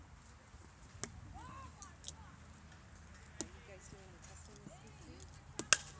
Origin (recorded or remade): recorded